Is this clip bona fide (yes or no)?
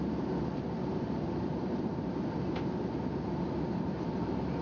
yes